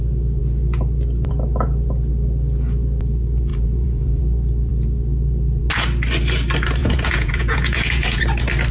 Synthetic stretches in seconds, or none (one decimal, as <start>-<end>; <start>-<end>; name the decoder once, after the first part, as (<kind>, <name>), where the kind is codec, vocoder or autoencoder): 3.5-4.2 (vocoder, Vocos); 6.8-8.2